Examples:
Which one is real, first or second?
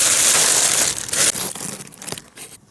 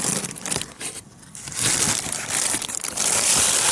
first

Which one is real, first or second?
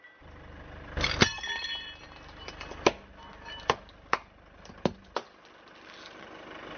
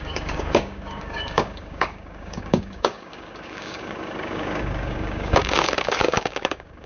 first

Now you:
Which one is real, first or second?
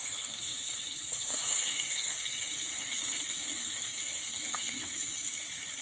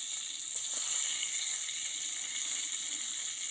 second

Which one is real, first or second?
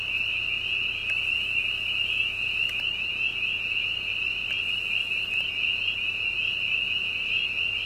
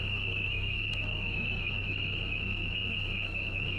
first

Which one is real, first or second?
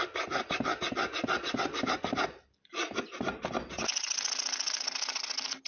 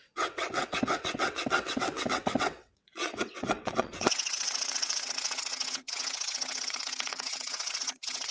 first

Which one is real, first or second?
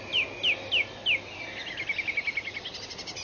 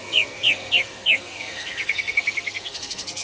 first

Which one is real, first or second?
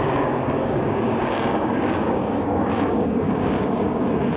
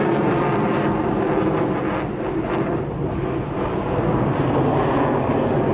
second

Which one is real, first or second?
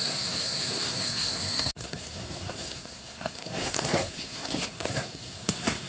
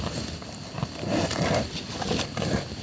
second